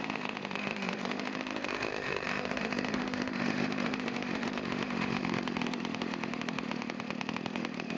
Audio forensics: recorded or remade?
remade